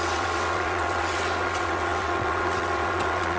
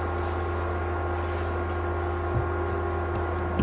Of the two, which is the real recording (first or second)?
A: second